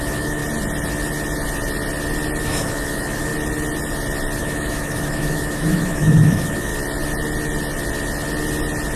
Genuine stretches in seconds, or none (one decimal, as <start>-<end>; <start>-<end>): 0.4-2.4; 3.3-4.4; 6.7-9.0